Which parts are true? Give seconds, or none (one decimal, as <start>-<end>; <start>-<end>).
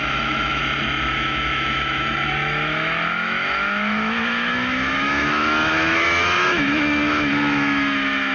0.6-1.1